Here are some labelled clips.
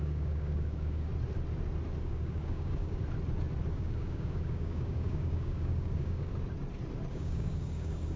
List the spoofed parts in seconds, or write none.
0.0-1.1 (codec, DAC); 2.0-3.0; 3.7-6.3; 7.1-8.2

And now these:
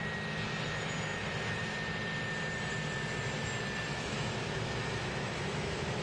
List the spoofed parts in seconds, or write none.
3.9-6.0 (autoencoder, DAC-VAE)

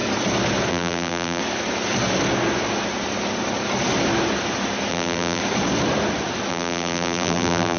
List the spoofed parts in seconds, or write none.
0.7-1.4 (vocoder, BigVGAN v2); 4.9-5.4; 6.5-7.8

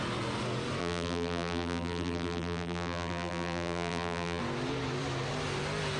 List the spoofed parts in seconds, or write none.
0.8-4.4 (vocoder, BigVGAN v2)

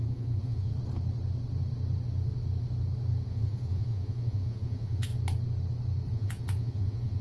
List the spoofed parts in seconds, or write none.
0.0-0.7 (vocoder, Vocos); 3.3-5.1; 6.1-7.2

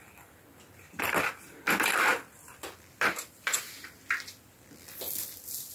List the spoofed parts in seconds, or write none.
2.1-4.0 (vocoder, BigVGAN v2)

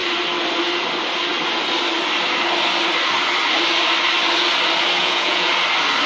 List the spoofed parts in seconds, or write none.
5.0-5.5 (vocoder, Vocos)

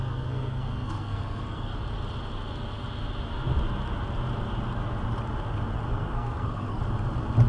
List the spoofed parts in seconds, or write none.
0.0-1.7 (codec, SNAC); 5.9-6.8